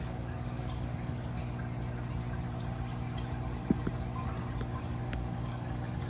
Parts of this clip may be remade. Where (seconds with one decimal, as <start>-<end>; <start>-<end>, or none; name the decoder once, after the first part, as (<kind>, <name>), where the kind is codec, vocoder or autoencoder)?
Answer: 0.0-1.4 (codec, DAC); 4.8-6.1